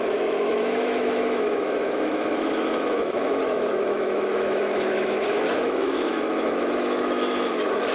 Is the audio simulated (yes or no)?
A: yes